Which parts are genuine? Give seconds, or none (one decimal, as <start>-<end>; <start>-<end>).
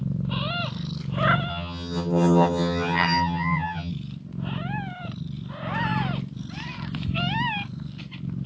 0.0-1.5; 3.9-8.5